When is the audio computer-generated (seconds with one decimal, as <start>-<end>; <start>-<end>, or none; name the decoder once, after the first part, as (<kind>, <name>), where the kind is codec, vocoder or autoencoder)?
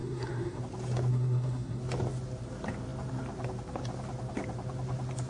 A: 0.0-0.6 (codec, SNAC); 1.1-1.8